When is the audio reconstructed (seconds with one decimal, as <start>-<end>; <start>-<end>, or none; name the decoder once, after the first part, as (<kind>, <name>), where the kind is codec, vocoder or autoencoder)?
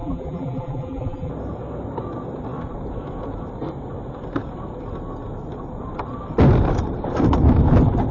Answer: 0.0-1.3 (vocoder, BigVGAN v2)